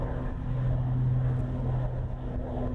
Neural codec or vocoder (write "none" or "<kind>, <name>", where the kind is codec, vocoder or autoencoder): none